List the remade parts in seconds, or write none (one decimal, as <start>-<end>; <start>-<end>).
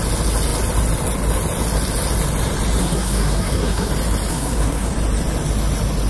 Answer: 2.8-3.9; 4.3-4.9